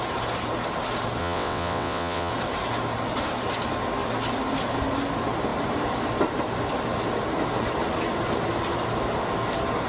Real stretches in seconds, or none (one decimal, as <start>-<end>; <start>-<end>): 0.0-1.2; 2.3-9.9